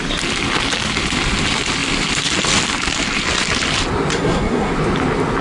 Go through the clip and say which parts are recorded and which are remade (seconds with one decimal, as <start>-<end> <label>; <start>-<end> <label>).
0.0-4.1 recorded; 4.1-4.7 remade; 4.7-5.4 recorded